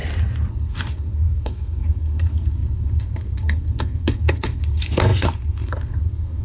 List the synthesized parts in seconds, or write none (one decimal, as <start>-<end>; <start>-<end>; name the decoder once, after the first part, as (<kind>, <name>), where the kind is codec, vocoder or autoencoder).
0.5-6.4 (codec, SNAC)